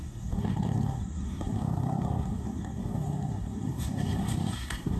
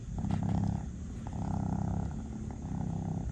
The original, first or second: second